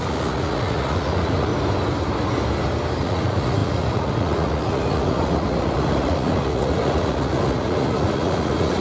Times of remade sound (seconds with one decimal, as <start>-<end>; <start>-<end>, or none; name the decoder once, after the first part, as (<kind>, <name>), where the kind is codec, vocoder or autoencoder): 0.0-1.5 (vocoder, Vocos); 3.0-8.8